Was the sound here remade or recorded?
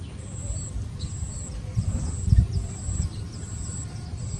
recorded